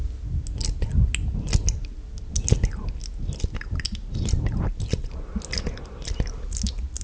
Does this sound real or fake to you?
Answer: real